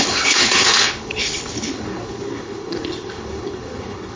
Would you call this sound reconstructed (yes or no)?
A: yes